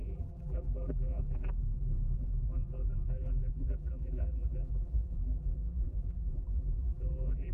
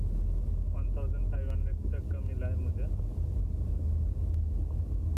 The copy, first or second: first